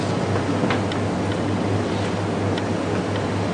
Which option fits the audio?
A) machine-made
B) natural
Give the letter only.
B